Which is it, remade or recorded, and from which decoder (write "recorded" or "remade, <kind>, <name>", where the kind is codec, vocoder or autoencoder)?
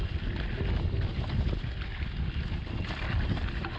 recorded